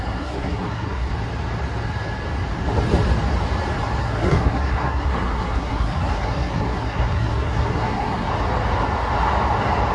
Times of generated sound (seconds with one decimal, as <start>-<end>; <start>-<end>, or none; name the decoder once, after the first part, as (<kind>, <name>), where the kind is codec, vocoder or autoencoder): 0.0-1.1 (codec, SNAC); 4.0-8.3